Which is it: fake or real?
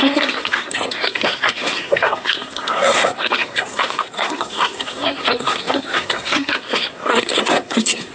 fake